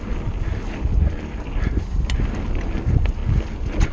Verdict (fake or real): real